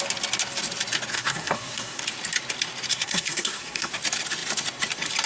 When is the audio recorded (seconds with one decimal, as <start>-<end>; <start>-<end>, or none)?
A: 0.0-1.1; 2.0-2.9; 3.9-5.3